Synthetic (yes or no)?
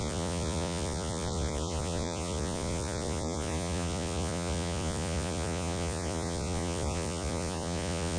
yes